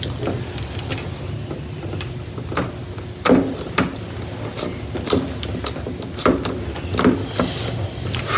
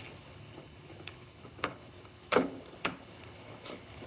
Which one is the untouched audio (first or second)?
first